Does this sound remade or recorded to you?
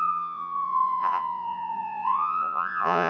remade